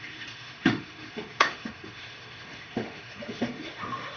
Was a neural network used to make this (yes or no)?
yes